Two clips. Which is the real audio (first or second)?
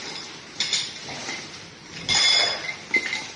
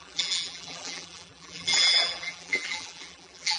first